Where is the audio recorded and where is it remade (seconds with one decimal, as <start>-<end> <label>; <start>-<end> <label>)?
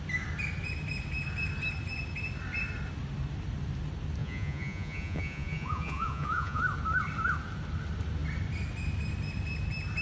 0.0-4.2 recorded; 4.2-6.6 remade; 6.6-10.0 recorded